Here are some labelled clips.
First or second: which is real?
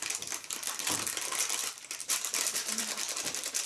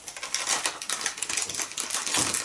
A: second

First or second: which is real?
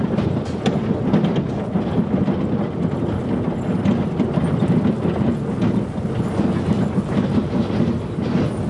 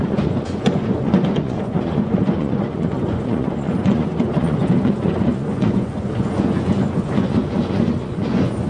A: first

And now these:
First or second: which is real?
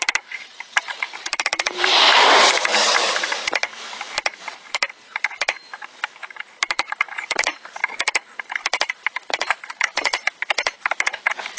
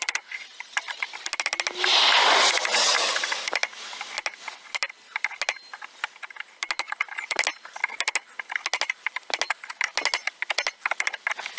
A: second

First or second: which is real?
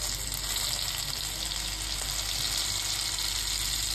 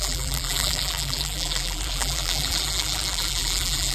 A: first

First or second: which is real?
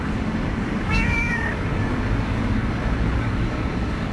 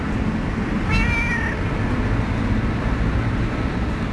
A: second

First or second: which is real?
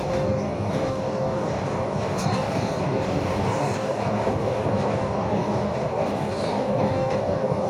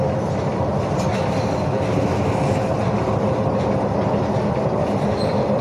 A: second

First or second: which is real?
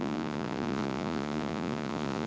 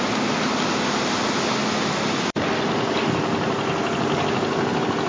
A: second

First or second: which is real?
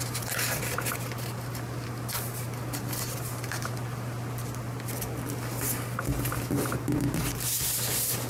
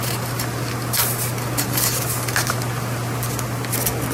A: second